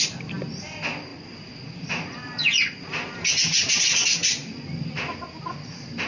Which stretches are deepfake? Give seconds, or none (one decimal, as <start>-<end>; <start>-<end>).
none